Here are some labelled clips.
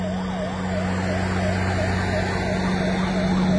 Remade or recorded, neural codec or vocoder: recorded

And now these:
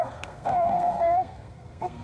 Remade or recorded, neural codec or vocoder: remade, codec, SNAC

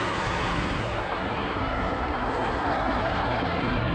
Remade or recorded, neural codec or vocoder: remade, codec, SNAC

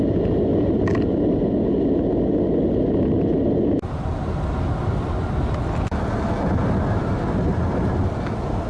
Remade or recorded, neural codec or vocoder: recorded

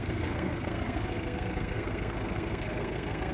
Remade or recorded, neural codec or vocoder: remade, codec, SNAC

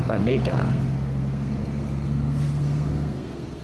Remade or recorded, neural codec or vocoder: remade, codec, SNAC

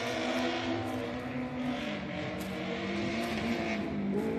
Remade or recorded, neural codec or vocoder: recorded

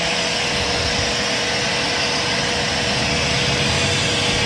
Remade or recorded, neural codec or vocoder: recorded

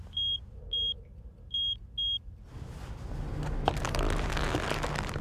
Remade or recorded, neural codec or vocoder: recorded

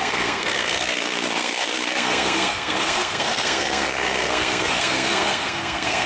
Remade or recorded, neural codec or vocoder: remade, codec, SNAC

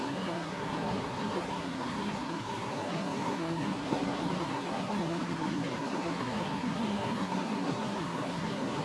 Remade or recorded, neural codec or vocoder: remade, codec, SNAC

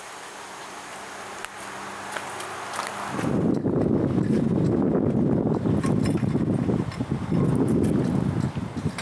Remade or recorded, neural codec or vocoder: recorded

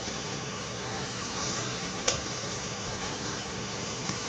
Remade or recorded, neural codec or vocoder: remade, codec, SNAC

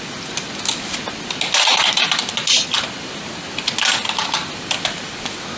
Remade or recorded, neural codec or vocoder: recorded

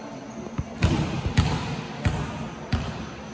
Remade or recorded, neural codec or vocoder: recorded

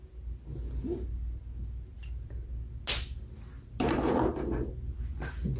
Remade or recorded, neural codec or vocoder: recorded